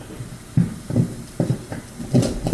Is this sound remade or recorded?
recorded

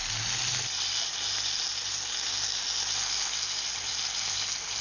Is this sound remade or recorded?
recorded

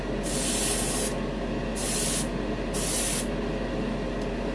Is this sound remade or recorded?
recorded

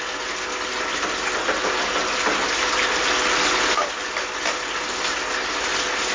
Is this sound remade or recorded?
recorded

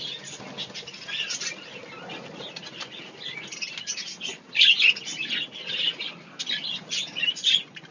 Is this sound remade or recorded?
recorded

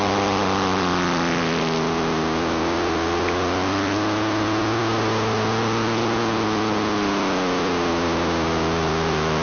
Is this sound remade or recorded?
recorded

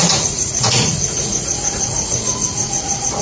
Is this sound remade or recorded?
remade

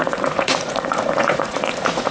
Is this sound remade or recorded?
remade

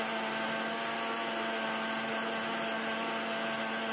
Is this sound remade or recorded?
recorded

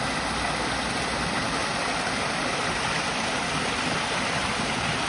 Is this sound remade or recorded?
recorded